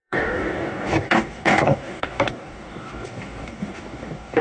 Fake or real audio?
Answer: fake